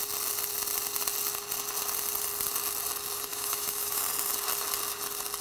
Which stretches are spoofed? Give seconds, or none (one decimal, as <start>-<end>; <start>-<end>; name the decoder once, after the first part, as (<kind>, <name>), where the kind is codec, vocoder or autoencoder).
3.3-4.0 (autoencoder, DAC-VAE)